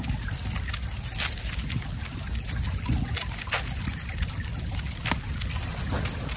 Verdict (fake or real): real